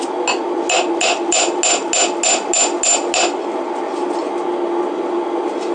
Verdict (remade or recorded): recorded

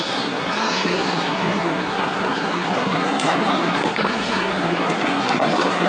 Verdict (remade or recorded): remade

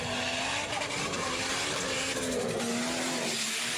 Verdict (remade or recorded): recorded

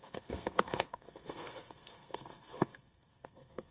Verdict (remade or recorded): remade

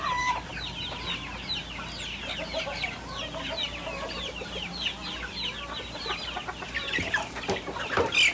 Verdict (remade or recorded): recorded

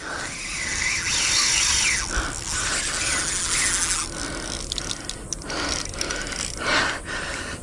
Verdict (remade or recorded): recorded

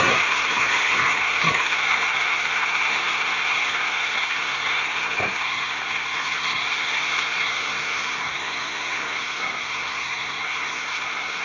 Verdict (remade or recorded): remade